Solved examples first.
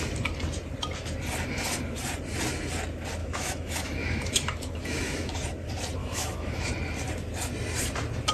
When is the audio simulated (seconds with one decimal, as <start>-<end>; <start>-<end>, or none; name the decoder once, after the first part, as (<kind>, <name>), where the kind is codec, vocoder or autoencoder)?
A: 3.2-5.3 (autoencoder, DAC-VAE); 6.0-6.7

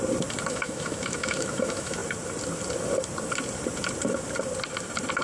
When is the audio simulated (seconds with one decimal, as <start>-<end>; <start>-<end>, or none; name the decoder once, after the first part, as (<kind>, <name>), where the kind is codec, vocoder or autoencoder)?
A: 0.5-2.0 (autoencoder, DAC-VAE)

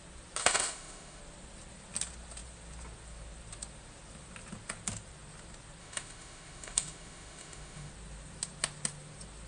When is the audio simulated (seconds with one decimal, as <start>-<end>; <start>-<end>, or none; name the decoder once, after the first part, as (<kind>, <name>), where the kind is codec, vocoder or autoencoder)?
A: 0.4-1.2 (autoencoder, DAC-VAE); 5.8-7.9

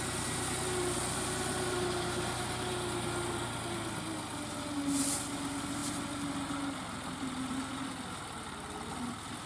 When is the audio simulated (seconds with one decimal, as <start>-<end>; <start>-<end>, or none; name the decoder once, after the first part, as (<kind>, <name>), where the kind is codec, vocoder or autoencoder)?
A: none

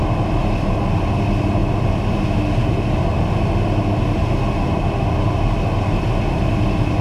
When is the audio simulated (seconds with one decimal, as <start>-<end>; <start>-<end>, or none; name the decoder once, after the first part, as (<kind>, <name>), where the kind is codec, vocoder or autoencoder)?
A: none

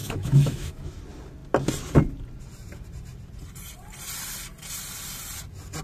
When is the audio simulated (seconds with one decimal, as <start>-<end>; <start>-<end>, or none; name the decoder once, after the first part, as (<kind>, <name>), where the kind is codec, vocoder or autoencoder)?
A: 0.0-1.0 (autoencoder, DAC-VAE)

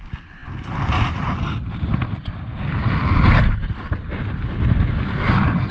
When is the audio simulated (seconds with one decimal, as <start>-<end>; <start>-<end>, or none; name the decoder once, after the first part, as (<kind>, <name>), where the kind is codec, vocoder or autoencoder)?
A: none

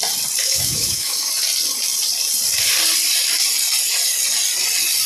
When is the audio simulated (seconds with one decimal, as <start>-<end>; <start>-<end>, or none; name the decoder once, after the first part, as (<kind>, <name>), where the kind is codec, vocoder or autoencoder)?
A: 0.4-1.3 (autoencoder, DAC-VAE)